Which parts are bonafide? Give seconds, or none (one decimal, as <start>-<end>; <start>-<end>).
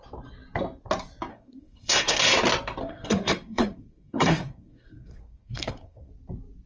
0.0-1.3; 2.2-2.8; 6.1-6.7